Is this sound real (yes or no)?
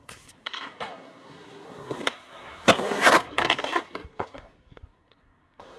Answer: no